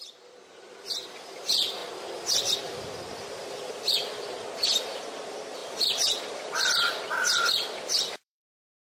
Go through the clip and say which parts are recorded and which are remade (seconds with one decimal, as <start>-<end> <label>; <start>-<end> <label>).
0.0-1.8 remade; 1.8-2.5 recorded; 2.5-4.0 remade; 4.0-4.9 recorded; 4.9-9.0 remade